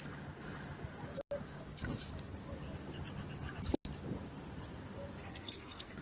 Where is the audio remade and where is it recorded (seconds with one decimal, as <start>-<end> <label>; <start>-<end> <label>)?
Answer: 0.0-5.3 recorded; 5.3-6.0 remade